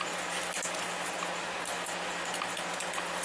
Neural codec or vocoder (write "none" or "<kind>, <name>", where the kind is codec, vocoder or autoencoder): none